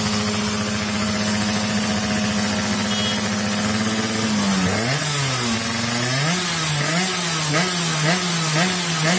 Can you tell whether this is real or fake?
real